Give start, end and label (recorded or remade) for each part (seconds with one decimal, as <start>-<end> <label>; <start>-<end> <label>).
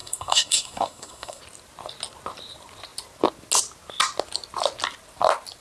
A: 0.0-1.4 remade; 1.4-5.6 recorded